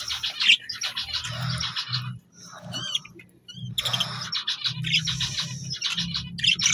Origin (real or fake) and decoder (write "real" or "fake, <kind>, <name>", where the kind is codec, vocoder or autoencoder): real